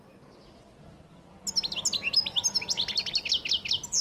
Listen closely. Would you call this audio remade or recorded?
recorded